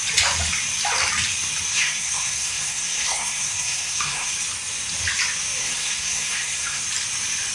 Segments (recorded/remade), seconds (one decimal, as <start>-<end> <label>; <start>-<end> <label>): 0.0-1.7 recorded; 1.7-4.3 remade; 4.3-5.6 recorded; 5.6-6.8 remade; 6.8-7.5 recorded